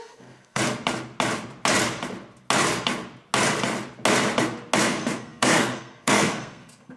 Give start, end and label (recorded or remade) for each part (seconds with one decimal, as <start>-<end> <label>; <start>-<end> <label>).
0.0-0.6 remade; 0.6-4.8 recorded; 4.8-7.0 remade